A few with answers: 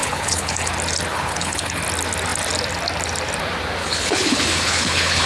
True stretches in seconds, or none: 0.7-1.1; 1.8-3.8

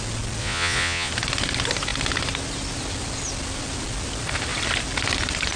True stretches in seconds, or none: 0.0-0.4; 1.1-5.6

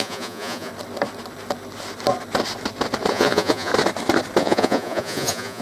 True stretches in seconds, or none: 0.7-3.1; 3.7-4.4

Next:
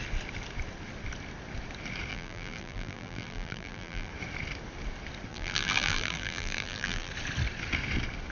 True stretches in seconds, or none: 0.0-2.1; 4.1-5.3; 7.1-8.3

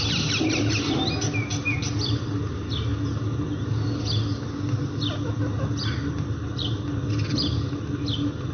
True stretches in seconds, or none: 0.0-8.5

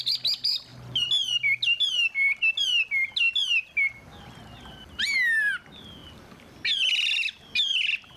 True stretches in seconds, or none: 0.0-8.2

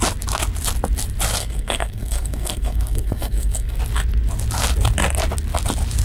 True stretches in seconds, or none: 0.0-1.4; 3.8-6.0